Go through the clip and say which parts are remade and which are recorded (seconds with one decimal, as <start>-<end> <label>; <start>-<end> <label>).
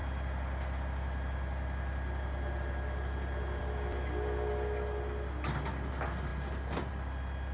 0.0-7.5 recorded